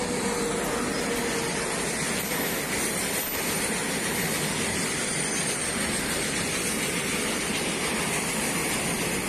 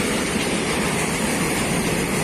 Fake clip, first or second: second